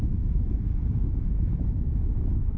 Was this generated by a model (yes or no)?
yes